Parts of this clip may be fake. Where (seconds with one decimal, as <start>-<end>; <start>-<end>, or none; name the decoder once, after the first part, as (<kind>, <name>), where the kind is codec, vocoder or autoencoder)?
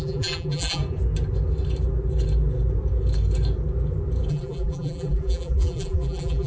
0.0-0.8 (vocoder, BigVGAN v2); 4.3-6.5